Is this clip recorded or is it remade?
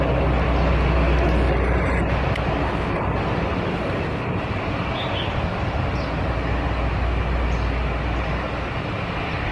recorded